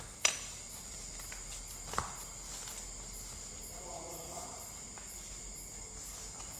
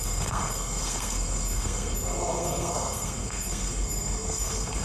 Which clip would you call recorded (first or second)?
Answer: first